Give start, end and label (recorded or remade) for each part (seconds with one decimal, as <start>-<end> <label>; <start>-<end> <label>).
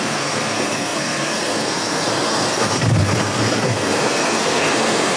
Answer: 0.0-5.2 remade